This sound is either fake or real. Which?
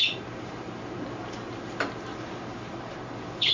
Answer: fake